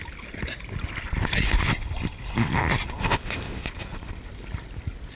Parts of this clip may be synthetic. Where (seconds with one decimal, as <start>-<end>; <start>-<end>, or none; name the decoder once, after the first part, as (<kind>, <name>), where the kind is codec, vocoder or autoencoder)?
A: 3.0-3.6 (codec, ZipCodec)

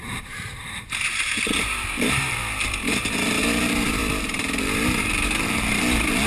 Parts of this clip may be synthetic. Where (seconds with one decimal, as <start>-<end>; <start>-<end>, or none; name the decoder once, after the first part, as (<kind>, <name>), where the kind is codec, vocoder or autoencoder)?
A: 0.0-2.4 (vocoder, BigVGAN v2); 2.9-6.3